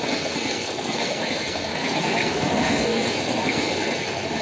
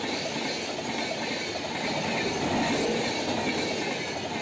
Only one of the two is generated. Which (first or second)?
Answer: first